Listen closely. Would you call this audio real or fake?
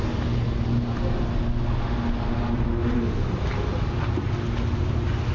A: real